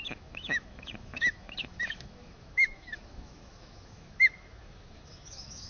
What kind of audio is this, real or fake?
fake